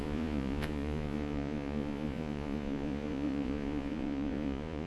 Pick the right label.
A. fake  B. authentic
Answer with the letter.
A